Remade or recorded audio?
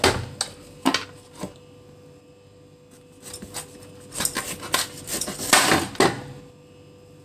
recorded